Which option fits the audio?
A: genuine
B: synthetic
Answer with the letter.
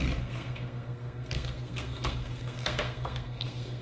B